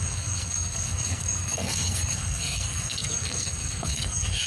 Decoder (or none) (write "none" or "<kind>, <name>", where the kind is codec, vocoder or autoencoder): codec, SNAC